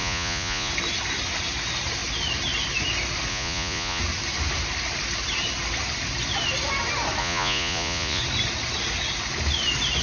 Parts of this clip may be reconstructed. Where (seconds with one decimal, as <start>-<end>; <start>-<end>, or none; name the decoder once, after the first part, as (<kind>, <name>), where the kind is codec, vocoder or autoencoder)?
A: 0.0-0.7 (vocoder, Vocos); 3.3-4.0; 7.2-8.2